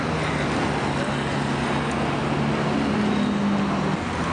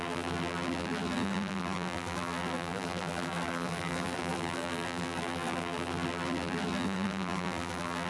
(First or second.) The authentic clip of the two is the first